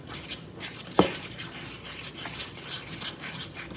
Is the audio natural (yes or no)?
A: yes